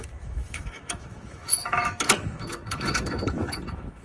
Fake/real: fake